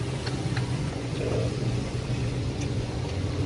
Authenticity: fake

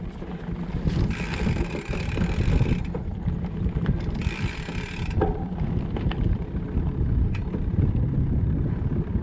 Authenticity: real